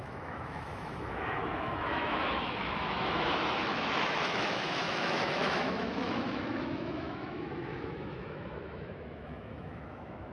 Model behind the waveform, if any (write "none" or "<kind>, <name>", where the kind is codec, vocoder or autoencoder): autoencoder, DAC-VAE